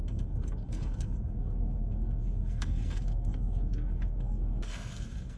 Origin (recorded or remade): remade